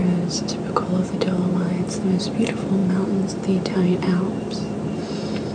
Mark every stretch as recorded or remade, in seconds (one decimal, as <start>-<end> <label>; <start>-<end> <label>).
0.0-1.5 recorded; 1.5-5.5 remade